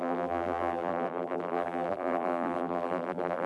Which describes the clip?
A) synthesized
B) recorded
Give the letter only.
A